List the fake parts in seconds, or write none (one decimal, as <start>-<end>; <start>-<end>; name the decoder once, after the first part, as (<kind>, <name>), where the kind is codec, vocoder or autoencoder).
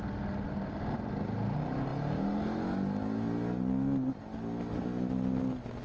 none